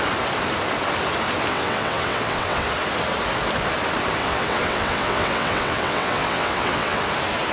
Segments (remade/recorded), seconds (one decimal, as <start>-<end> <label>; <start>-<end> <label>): 0.0-1.5 recorded; 1.5-2.7 remade; 2.7-4.2 recorded; 4.2-7.0 remade; 7.0-7.5 recorded

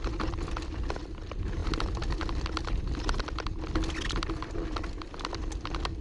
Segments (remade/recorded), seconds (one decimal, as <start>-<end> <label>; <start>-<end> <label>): 0.0-6.0 recorded

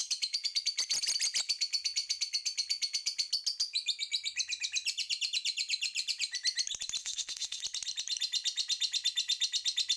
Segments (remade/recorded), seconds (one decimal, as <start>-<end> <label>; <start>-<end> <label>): 0.0-7.0 recorded; 7.0-7.6 remade; 7.6-10.0 recorded

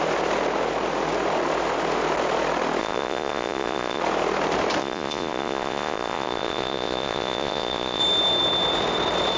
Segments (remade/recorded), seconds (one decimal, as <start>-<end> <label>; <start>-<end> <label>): 0.0-2.8 recorded; 2.8-4.0 remade; 4.0-4.8 recorded; 4.8-8.0 remade; 8.0-9.4 recorded

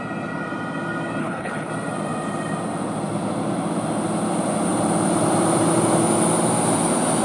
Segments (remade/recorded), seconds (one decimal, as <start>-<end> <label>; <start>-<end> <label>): 0.0-1.2 recorded; 1.2-1.7 remade; 1.7-7.2 recorded